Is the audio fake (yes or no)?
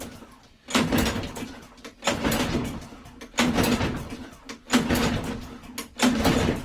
no